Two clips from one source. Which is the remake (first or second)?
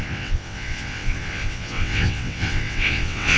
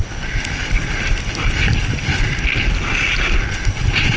first